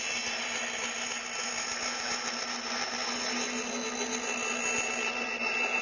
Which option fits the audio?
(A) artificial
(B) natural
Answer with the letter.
B